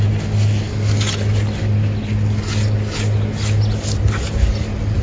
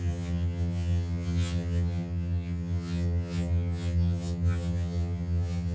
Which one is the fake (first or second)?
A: second